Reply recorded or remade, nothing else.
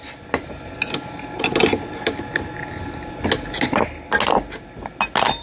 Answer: recorded